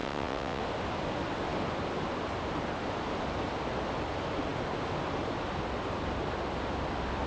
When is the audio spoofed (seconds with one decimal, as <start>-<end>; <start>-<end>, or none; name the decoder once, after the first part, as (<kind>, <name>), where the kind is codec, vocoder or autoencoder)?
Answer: 0.0-0.6 (vocoder, WaveNeXt)